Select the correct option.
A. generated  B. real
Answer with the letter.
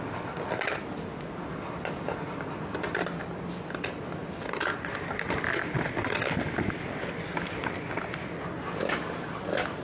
B